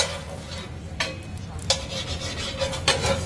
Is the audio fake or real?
real